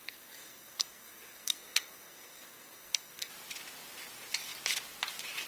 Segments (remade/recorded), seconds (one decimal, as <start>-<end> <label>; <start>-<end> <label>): 0.0-3.3 remade; 3.3-5.5 recorded